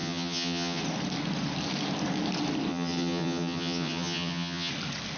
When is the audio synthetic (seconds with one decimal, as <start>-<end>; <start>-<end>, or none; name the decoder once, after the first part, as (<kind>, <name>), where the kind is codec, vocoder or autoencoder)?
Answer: 0.0-0.8 (vocoder, HiFi-GAN); 2.7-4.7